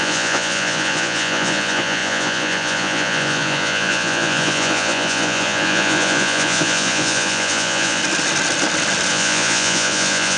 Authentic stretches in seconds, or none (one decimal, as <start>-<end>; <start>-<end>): 8.0-9.1